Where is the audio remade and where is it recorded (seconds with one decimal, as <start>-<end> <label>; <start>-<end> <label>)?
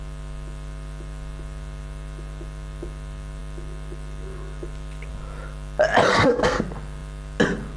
0.0-6.1 recorded; 6.1-6.6 remade; 6.6-7.8 recorded